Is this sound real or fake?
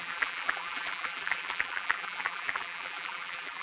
fake